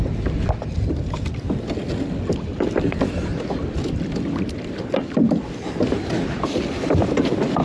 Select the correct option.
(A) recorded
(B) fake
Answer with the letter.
A